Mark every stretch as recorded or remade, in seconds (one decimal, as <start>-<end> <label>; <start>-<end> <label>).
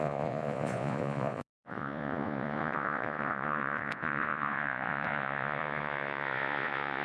0.0-7.0 remade